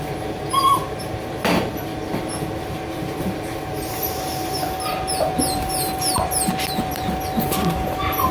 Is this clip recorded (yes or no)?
no